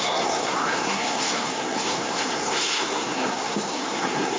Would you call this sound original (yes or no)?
no